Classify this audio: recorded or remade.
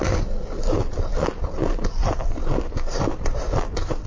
recorded